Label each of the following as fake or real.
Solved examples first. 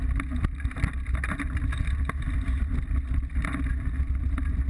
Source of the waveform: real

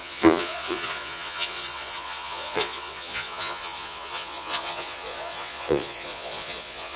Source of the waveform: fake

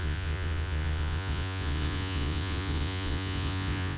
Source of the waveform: fake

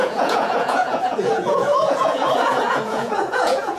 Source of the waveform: fake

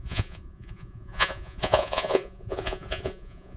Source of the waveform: fake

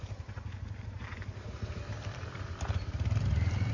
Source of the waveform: real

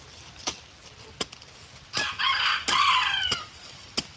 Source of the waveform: real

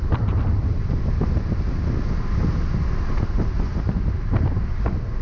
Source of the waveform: real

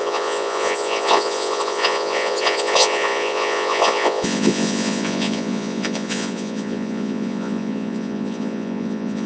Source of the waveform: fake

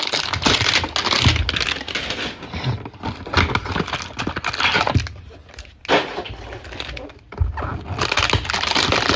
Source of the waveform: real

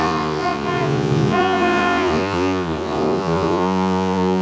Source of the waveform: fake